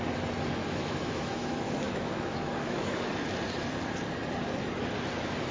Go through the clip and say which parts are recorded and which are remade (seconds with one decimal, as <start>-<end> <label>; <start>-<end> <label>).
0.0-0.6 recorded; 0.6-3.1 remade; 3.1-5.5 recorded